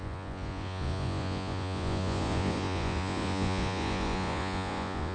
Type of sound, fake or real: fake